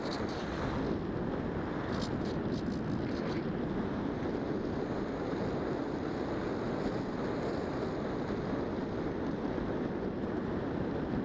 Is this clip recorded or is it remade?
recorded